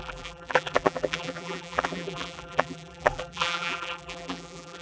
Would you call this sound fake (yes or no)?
yes